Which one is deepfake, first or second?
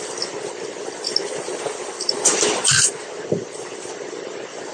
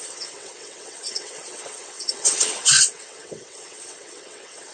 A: second